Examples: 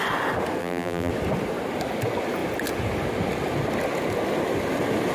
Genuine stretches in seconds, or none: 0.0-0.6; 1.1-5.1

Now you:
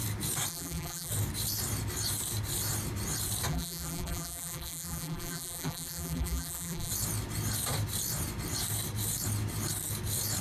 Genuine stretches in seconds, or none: 0.0-0.5; 1.1-3.5; 6.9-10.4

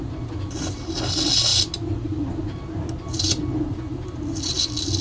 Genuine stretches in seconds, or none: 0.0-5.0

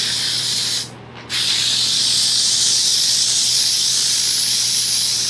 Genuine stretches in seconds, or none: 0.0-5.3

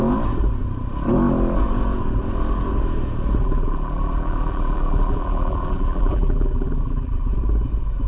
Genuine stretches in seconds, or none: 0.0-3.4; 7.3-8.1